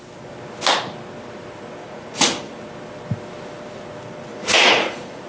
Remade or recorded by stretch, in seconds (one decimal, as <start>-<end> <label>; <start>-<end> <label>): 0.0-1.8 recorded; 1.8-2.6 remade; 2.6-4.3 recorded; 4.3-5.3 remade